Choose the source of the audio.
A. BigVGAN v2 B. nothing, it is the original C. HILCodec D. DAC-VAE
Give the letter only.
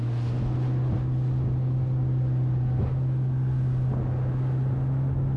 B